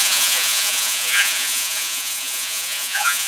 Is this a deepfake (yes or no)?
yes